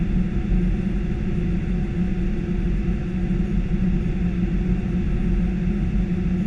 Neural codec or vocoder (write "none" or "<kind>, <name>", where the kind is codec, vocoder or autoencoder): none